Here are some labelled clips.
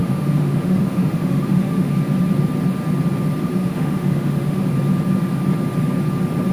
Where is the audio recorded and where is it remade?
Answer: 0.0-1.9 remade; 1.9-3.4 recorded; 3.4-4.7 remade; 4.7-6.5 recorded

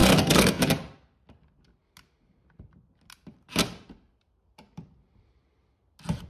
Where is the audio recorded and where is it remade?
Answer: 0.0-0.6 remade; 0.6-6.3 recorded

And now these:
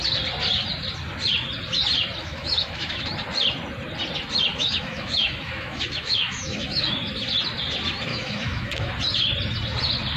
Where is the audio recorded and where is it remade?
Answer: 0.0-2.2 recorded; 2.2-3.0 remade; 3.0-4.5 recorded; 4.5-7.1 remade; 7.1-8.1 recorded; 8.1-8.9 remade; 8.9-10.2 recorded

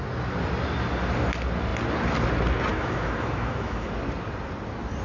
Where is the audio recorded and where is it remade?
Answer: 0.0-2.7 recorded; 2.7-3.9 remade; 3.9-5.0 recorded

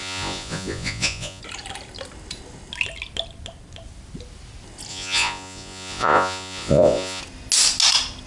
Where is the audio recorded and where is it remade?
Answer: 0.0-1.4 remade; 1.4-4.9 recorded; 4.9-7.2 remade; 7.2-8.3 recorded